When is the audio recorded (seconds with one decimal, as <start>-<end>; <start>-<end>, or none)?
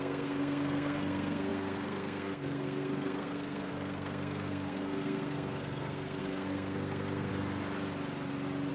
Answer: 7.3-8.7